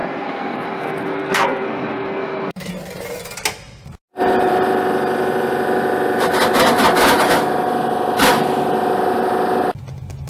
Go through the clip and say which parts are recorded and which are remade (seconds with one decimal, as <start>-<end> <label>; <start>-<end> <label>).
0.0-2.7 remade; 2.7-10.3 recorded